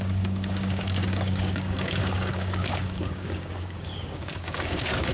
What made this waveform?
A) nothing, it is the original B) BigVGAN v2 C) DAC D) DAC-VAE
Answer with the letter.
C